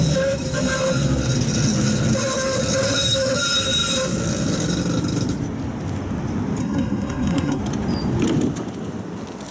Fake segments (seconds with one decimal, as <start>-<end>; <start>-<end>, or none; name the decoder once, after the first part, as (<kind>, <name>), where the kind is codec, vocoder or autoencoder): 6.6-7.6 (codec, SNAC)